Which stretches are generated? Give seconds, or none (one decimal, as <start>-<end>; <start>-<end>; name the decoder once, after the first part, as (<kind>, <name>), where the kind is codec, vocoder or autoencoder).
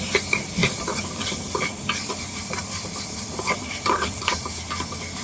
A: none